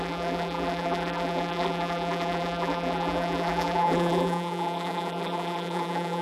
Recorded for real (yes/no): no